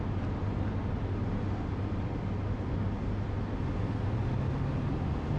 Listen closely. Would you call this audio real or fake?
real